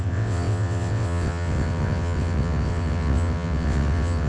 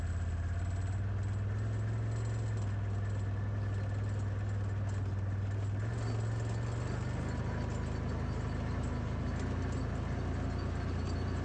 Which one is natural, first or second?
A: second